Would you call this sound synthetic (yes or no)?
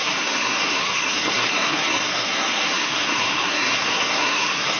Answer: yes